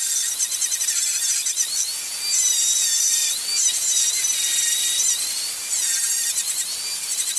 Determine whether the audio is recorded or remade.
recorded